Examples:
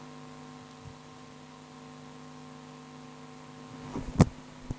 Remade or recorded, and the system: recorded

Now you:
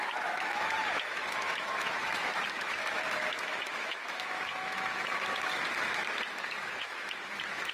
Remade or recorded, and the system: remade, autoencoder, DAC-VAE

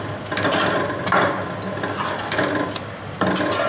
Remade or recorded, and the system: recorded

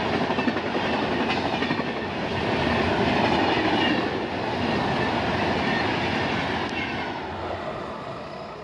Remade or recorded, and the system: recorded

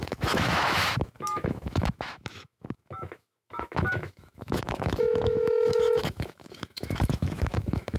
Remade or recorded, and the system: remade, autoencoder, DAC-VAE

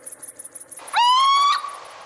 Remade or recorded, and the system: recorded